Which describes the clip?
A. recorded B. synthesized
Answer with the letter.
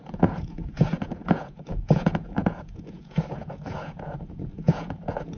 B